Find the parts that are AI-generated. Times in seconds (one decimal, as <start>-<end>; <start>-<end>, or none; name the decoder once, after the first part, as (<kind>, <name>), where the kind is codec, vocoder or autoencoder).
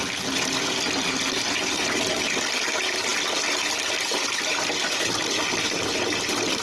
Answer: none